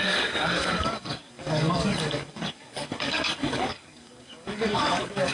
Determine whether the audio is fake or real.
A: fake